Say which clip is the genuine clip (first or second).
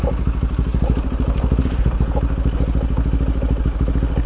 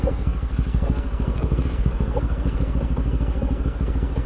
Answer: first